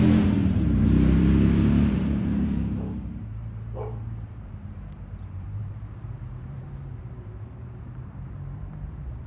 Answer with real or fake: fake